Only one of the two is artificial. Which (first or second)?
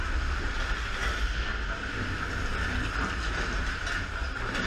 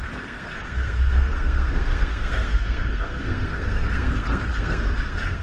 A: second